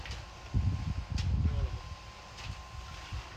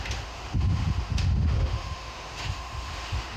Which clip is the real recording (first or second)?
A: first